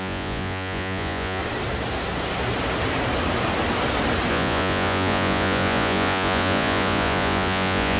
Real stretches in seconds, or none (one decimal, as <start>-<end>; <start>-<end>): 1.4-4.3